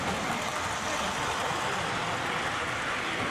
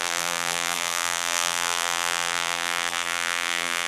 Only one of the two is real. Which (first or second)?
first